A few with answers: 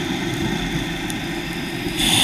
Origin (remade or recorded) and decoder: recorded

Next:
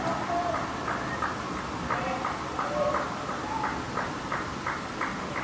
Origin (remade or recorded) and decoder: recorded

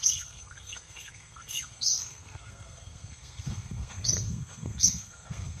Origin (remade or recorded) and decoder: remade, codec, SNAC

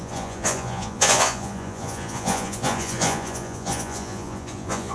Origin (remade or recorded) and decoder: remade, vocoder, Vocos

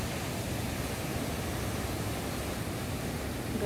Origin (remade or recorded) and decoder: recorded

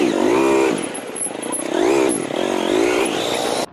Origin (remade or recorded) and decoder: recorded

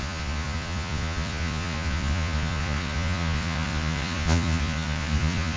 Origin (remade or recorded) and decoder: remade, vocoder, Vocos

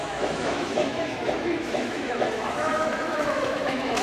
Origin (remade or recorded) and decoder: remade, autoencoder, DAC-VAE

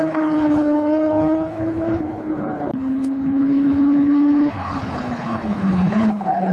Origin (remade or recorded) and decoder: remade, codec, HILCodec